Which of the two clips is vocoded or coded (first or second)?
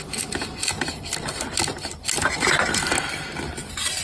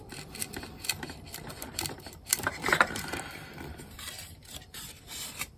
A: second